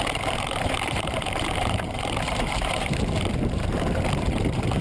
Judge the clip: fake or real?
fake